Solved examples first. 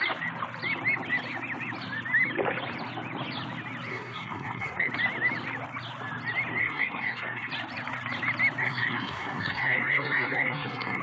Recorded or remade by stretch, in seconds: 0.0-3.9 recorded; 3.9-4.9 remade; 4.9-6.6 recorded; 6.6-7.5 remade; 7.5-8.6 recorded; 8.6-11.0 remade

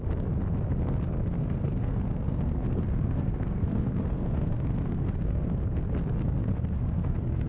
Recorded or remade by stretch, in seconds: 0.0-1.4 recorded; 1.4-5.5 remade; 5.5-6.4 recorded; 6.4-7.5 remade

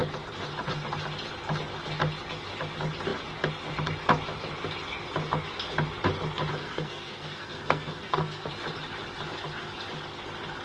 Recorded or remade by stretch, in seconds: 0.0-6.6 recorded; 6.6-8.5 remade; 8.5-10.6 recorded

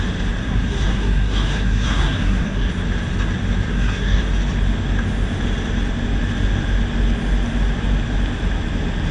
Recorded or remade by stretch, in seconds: 0.0-0.4 recorded; 0.4-2.7 remade; 2.7-3.7 recorded; 3.7-4.2 remade; 4.2-9.1 recorded

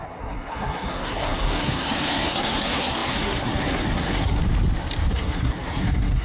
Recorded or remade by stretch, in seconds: 0.0-4.4 remade; 4.4-5.1 recorded; 5.1-6.2 remade

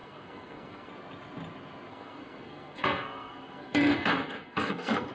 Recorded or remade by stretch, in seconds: 0.0-0.9 remade; 0.9-1.9 recorded; 1.9-5.1 remade

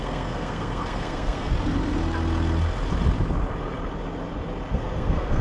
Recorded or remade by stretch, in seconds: 0.0-1.5 remade; 1.5-4.7 recorded; 4.7-5.4 remade